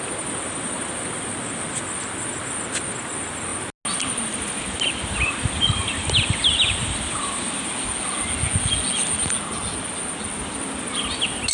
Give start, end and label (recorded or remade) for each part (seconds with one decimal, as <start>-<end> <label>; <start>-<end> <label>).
0.0-11.5 recorded